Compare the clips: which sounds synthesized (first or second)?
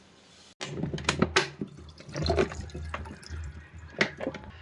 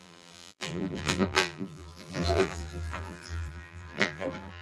second